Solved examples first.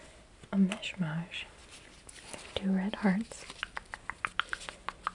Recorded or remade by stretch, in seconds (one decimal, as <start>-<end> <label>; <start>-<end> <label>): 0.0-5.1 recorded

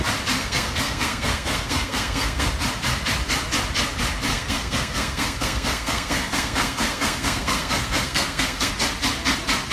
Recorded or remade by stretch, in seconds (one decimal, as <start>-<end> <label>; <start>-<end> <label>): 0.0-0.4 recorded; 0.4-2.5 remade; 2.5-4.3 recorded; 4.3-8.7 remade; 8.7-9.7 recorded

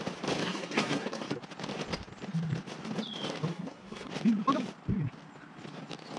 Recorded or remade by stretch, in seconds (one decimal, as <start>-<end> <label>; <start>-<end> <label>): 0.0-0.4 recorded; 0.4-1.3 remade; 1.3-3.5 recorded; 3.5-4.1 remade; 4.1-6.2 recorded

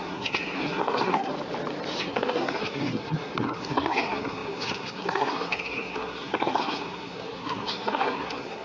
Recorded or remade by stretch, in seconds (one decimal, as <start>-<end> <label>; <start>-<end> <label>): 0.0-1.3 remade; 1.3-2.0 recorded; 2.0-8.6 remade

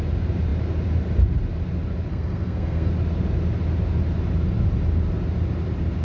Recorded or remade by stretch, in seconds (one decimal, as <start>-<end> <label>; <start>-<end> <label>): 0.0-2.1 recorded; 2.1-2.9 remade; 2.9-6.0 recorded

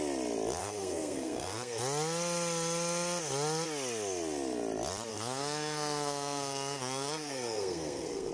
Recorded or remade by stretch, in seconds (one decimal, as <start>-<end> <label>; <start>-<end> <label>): 0.0-0.6 recorded; 0.6-1.8 remade; 1.8-5.1 recorded; 5.1-8.3 remade